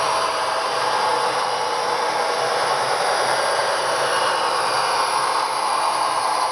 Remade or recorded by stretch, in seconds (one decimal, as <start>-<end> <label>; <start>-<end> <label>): 0.0-1.1 remade; 1.1-2.5 recorded; 2.5-3.6 remade; 3.6-6.5 recorded